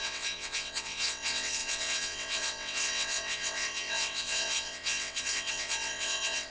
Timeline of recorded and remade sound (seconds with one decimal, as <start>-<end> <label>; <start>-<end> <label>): 0.0-6.5 remade